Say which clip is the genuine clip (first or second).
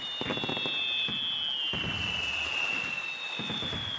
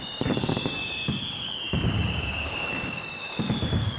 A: first